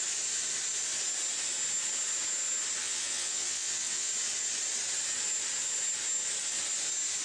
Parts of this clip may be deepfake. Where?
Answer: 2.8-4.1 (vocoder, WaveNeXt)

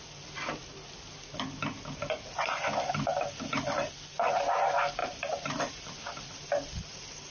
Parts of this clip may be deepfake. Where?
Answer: 5.0-7.3 (vocoder, BigVGAN v2)

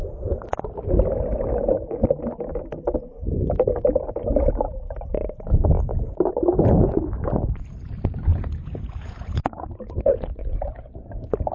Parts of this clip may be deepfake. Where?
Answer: 8.3-10.9 (vocoder, Vocos)